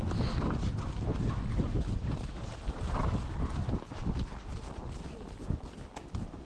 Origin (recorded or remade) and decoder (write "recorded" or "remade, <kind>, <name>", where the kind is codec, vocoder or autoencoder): recorded